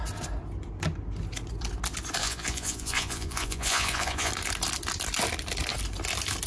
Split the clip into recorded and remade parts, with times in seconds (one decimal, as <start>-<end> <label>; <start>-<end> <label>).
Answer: 0.0-2.2 recorded; 2.2-4.3 remade; 4.3-6.5 recorded